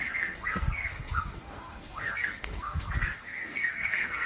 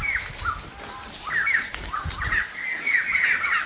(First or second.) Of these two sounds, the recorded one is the second